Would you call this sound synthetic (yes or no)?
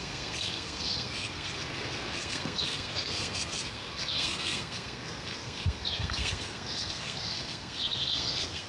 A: yes